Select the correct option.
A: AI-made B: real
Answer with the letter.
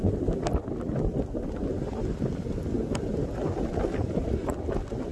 B